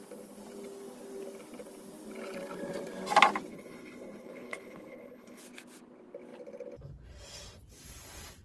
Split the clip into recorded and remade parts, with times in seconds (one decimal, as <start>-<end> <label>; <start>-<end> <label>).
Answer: 0.0-3.5 recorded; 3.5-5.4 remade; 5.4-8.4 recorded